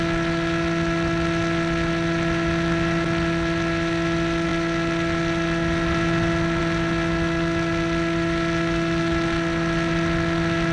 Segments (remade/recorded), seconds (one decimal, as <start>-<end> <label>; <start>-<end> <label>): 0.0-10.7 recorded